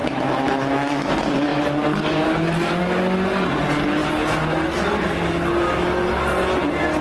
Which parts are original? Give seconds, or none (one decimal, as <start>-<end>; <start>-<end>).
1.1-7.0